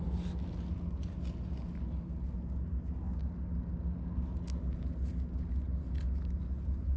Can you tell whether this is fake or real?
real